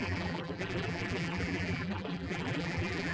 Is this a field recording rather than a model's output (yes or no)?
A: no